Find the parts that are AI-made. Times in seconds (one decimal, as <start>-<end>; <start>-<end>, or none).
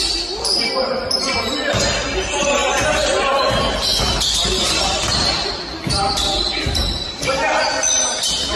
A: 5.1-7.3